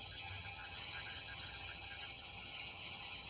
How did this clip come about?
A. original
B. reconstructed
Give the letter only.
B